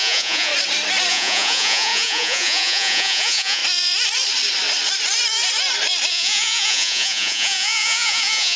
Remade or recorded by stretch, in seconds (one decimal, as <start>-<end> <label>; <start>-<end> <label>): 0.0-0.5 remade; 0.5-1.1 recorded; 1.1-3.6 remade; 3.6-6.1 recorded; 6.1-8.6 remade